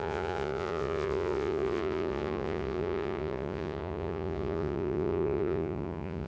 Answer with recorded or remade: remade